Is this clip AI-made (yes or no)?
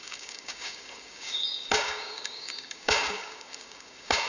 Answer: yes